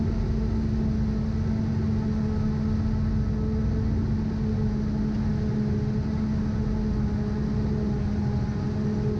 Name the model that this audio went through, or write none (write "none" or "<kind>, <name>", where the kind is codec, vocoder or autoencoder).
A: none